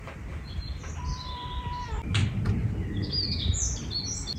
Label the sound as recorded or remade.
recorded